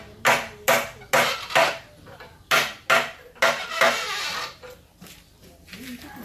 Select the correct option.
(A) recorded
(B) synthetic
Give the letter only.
A